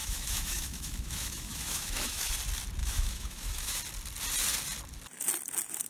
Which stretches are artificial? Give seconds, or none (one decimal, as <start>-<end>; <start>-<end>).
0.0-2.3; 2.8-3.8